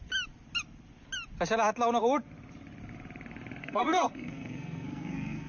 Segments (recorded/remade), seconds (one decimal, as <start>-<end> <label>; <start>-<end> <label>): 0.0-3.6 recorded; 3.6-5.5 remade